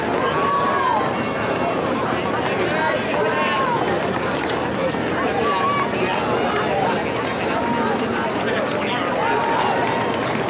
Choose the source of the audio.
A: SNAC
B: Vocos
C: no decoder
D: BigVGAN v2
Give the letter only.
C